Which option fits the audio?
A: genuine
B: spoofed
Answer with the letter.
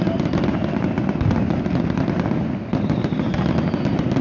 A